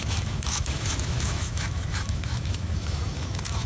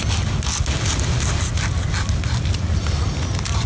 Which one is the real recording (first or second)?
second